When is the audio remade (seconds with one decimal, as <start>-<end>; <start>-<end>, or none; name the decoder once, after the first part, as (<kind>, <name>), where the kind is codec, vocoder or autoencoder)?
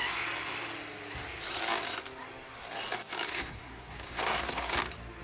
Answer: 3.3-4.7 (codec, SNAC)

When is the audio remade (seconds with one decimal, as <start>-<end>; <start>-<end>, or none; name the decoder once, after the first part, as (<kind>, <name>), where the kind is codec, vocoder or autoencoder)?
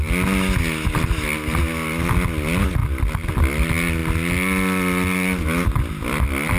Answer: none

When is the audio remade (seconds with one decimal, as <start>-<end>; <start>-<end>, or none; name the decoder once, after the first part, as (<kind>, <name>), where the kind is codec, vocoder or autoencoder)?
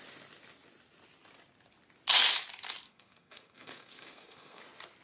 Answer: 2.9-4.6 (codec, SNAC)